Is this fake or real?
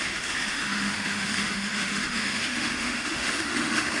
fake